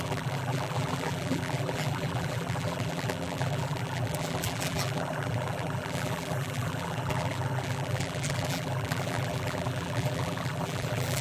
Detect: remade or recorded remade